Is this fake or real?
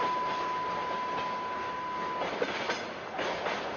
real